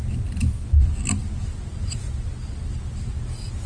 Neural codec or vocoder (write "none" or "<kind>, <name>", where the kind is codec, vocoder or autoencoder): none